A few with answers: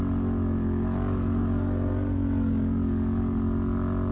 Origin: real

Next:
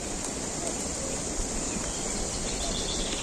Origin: real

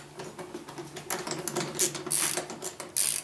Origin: real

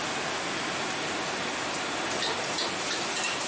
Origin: real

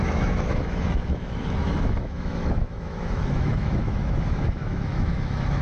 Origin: fake